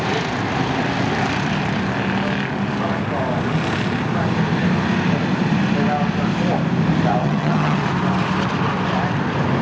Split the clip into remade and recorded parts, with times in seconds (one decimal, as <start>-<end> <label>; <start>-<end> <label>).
0.0-7.2 recorded; 7.2-7.8 remade; 7.8-9.6 recorded